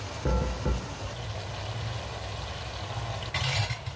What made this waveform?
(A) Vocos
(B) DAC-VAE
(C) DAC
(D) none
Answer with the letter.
D